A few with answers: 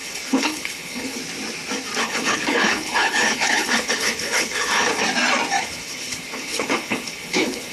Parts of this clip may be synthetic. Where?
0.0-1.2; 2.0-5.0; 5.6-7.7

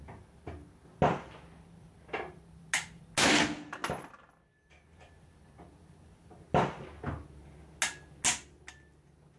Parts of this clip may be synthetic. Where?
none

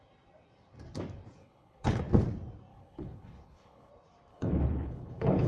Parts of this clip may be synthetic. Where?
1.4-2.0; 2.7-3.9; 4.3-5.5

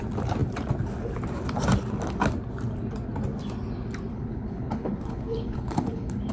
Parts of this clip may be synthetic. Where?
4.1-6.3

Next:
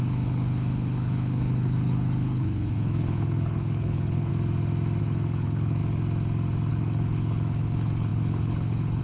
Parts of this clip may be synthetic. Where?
0.0-4.3; 5.0-5.8; 6.7-9.0

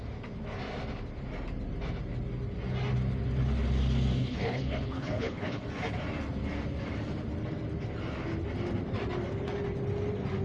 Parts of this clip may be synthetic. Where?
4.2-5.6